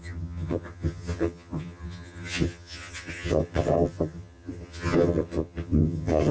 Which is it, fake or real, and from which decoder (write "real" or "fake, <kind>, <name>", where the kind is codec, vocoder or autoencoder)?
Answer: fake, vocoder, HiFi-GAN